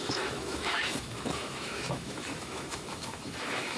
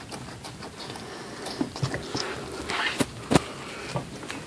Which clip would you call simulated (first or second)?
first